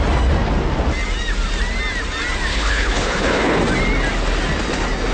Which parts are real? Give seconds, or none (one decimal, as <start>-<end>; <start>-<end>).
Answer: 0.0-2.5; 3.6-5.1

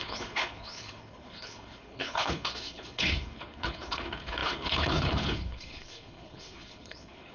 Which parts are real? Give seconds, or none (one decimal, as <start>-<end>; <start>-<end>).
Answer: none